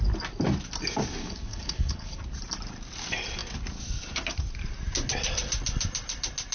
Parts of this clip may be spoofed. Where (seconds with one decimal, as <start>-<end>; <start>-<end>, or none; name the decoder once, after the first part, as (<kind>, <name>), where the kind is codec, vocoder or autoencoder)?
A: 1.2-2.2 (codec, HILCodec)